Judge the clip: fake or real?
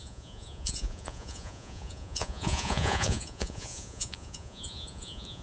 fake